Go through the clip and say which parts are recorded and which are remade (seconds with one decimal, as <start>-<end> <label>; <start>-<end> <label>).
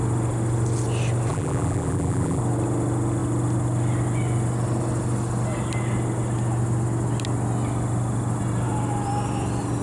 0.0-1.3 recorded; 1.3-2.4 remade; 2.4-9.8 recorded